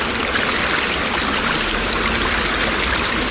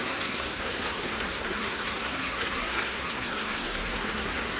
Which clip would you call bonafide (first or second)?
first